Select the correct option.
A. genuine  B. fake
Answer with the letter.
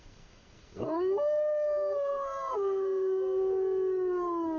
B